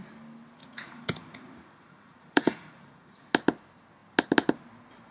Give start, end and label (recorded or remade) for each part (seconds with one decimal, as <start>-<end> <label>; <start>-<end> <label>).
0.0-0.6 recorded; 0.6-3.3 remade; 3.3-5.1 recorded